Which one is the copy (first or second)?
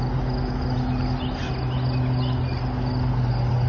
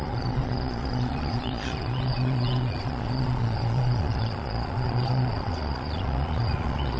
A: second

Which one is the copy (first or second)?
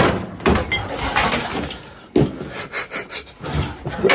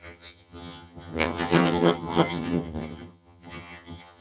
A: second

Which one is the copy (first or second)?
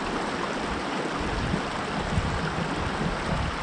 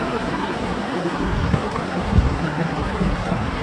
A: second